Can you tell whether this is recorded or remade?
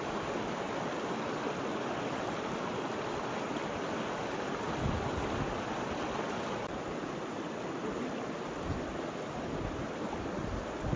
recorded